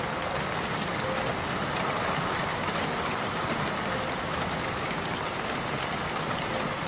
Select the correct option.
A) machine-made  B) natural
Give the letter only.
B